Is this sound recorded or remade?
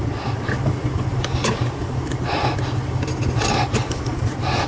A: recorded